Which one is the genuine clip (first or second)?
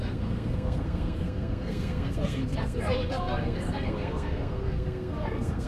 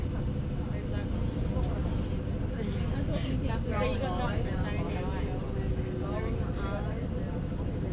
second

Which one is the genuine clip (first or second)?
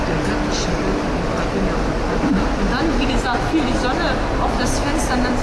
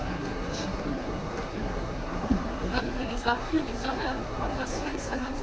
first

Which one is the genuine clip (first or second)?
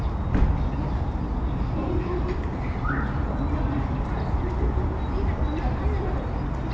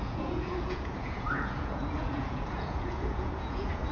first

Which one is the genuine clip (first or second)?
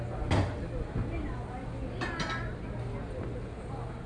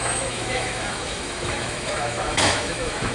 first